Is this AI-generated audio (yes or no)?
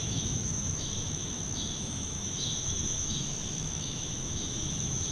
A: yes